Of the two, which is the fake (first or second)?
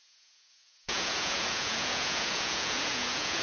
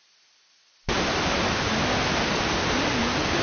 first